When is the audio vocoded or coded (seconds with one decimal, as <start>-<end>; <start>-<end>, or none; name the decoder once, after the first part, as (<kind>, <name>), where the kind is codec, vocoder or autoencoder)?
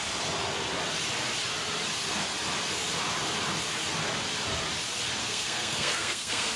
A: 5.2-6.6 (codec, SNAC)